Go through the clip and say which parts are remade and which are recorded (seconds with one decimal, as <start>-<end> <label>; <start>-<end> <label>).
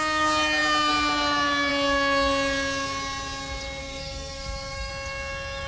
0.0-3.8 recorded; 3.8-4.9 remade; 4.9-5.7 recorded